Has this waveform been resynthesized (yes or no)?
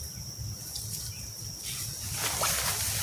no